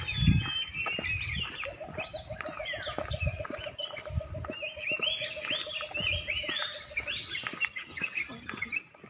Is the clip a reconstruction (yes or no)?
no